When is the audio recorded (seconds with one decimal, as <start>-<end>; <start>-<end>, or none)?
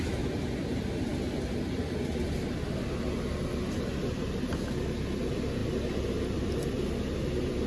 0.0-7.7